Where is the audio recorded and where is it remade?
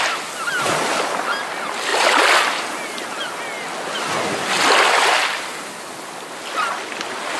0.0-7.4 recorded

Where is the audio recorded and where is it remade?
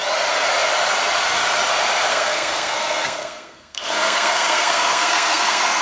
0.0-2.1 recorded; 2.1-5.8 remade